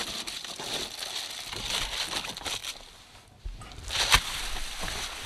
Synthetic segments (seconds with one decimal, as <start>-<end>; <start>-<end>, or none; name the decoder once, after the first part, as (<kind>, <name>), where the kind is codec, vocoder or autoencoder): none